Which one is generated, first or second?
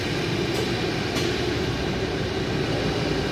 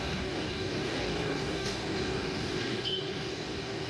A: second